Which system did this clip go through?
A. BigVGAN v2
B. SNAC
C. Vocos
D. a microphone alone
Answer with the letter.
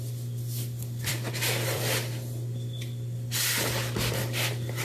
A